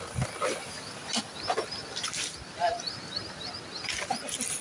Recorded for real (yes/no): yes